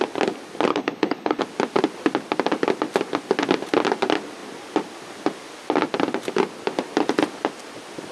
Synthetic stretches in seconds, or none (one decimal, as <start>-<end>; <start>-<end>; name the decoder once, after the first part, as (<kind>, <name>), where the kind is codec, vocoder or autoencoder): 0.7-1.4 (codec, HILCodec)